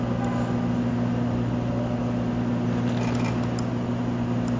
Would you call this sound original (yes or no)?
yes